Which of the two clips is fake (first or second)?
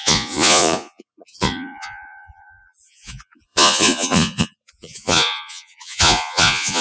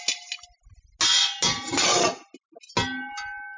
first